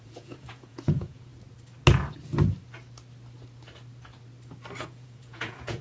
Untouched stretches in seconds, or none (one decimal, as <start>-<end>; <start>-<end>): 1.3-4.8